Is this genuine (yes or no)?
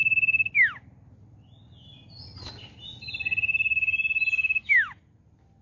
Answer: yes